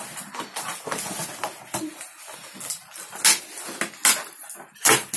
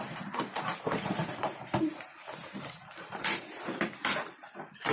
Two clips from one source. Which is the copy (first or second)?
second